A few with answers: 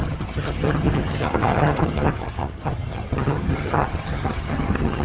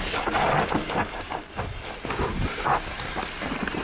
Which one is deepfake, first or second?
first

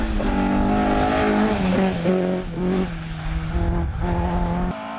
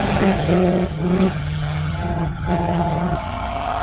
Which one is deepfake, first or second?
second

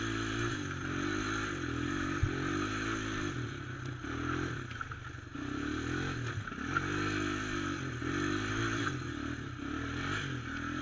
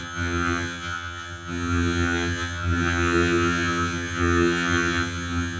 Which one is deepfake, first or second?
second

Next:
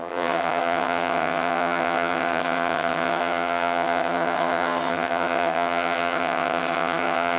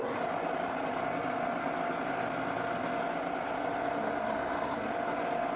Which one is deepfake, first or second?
first